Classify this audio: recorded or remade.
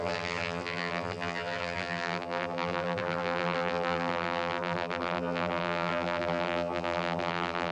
remade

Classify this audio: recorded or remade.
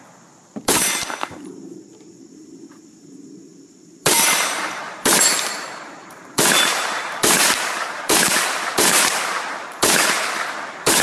remade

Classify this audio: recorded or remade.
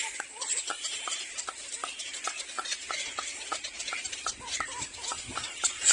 recorded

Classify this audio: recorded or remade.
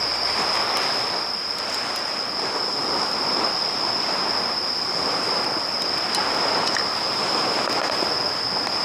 recorded